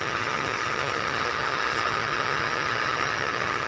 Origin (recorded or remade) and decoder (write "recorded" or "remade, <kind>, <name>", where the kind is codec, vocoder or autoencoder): remade, vocoder, HiFi-GAN